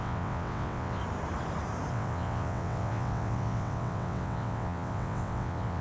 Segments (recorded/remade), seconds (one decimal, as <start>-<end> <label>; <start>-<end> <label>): 0.0-1.0 remade; 1.0-1.9 recorded; 1.9-5.8 remade